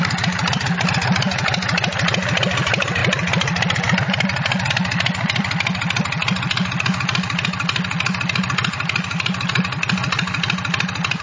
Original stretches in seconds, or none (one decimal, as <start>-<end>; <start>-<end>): 0.0-11.2